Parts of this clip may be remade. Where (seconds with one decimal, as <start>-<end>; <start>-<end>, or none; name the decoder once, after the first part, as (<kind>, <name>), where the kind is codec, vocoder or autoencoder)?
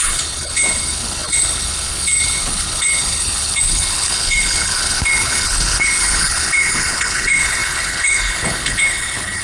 0.0-9.4 (codec, HILCodec)